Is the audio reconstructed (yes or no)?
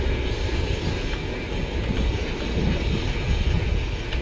no